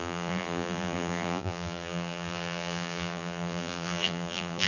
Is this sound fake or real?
fake